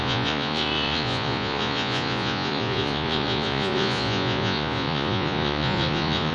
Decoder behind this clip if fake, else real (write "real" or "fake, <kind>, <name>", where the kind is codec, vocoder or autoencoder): fake, vocoder, Vocos